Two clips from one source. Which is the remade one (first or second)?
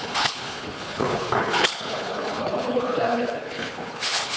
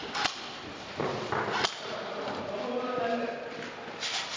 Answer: first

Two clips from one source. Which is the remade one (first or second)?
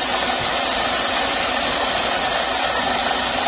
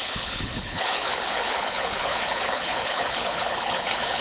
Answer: second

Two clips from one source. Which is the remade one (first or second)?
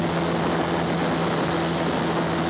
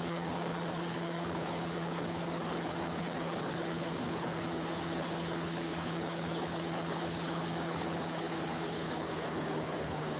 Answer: second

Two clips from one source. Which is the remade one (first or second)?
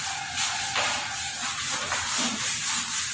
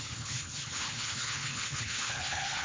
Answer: second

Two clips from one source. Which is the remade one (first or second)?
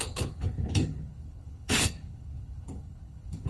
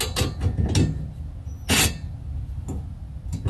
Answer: first